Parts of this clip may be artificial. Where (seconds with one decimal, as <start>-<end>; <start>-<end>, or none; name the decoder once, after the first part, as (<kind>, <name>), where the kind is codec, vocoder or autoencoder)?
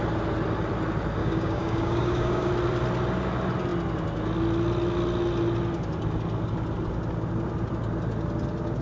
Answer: 1.2-2.5 (codec, DAC)